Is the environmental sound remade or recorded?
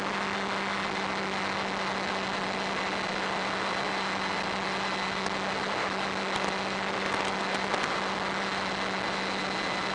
recorded